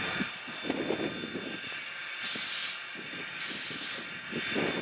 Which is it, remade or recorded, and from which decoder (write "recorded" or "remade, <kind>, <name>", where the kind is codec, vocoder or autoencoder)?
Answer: recorded